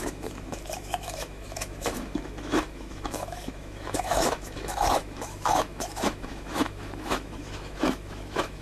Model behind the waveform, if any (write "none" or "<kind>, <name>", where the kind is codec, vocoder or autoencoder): autoencoder, DAC-VAE